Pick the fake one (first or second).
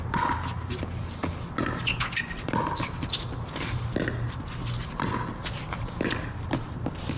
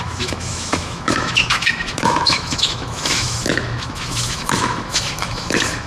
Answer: second